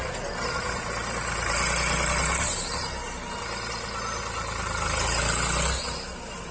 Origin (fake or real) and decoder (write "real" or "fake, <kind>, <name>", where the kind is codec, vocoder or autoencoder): real